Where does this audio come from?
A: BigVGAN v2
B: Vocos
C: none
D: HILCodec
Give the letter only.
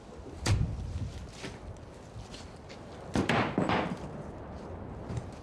C